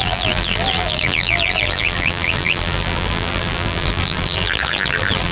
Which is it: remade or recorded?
remade